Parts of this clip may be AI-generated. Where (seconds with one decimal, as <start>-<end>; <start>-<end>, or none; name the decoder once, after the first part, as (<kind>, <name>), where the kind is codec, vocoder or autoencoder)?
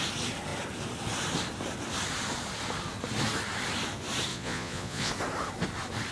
4.3-5.1 (vocoder, Vocos)